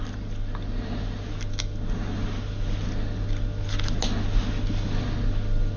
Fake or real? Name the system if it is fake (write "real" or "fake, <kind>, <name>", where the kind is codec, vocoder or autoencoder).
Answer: real